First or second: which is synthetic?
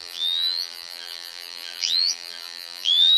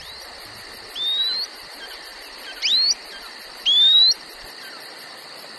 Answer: first